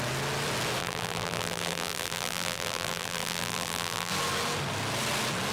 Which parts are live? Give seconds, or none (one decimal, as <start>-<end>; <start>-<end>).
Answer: 0.0-0.8; 4.1-5.5